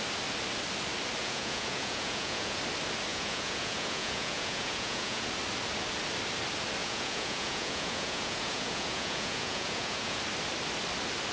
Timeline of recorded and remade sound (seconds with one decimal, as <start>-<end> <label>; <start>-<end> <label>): 0.0-1.2 recorded; 1.2-2.6 remade; 2.6-3.1 recorded; 3.1-5.3 remade; 5.3-6.8 recorded; 6.8-10.2 remade; 10.2-11.3 recorded